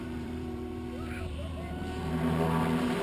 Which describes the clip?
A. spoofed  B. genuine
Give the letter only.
A